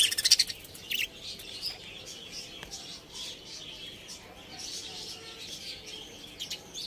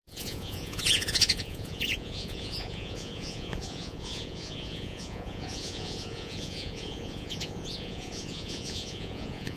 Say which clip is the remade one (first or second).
second